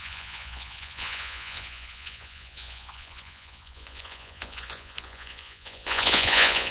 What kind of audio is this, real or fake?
fake